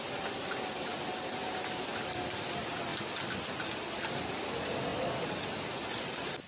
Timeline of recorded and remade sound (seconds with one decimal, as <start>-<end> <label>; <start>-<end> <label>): 0.0-6.5 recorded

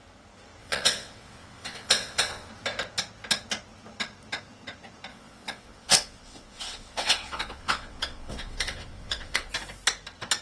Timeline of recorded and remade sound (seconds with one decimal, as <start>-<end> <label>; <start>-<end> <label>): 0.0-0.6 recorded; 0.6-2.5 remade; 2.5-5.1 recorded; 5.1-9.5 remade; 9.5-10.4 recorded